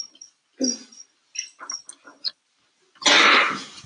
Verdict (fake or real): real